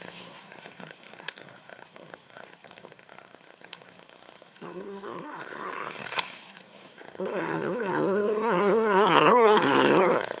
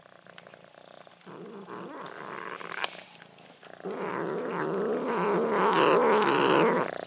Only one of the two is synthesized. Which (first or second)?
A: first